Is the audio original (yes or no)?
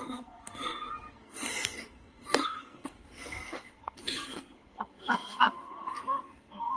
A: no